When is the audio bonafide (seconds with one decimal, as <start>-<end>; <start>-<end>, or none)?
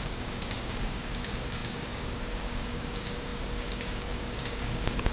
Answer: none